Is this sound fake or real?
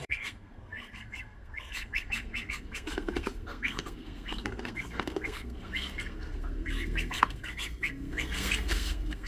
fake